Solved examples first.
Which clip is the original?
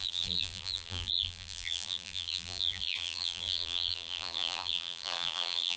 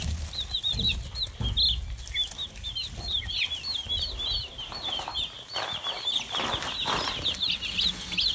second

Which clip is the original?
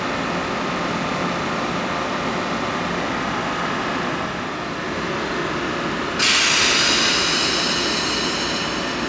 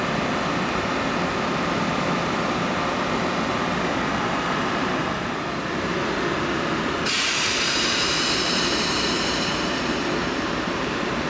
first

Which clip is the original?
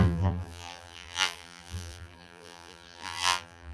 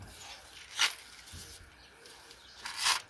second